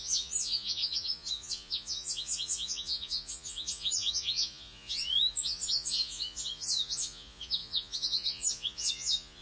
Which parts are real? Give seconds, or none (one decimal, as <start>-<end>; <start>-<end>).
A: none